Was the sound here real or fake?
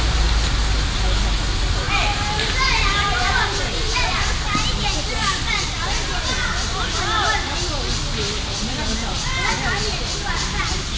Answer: real